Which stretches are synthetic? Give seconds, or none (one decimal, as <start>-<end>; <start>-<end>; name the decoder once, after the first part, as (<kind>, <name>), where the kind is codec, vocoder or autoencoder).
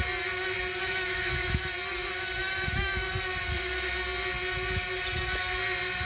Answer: 0.7-1.6 (autoencoder, DAC-VAE); 2.4-3.1